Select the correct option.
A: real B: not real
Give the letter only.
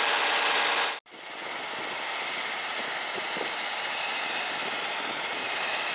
A